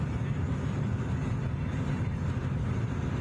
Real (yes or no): yes